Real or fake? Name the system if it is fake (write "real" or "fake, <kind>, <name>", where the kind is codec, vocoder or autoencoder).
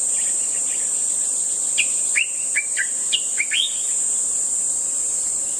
real